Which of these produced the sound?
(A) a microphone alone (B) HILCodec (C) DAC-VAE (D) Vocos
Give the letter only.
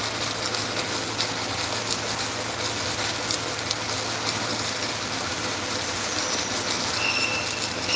A